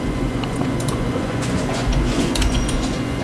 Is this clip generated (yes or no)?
yes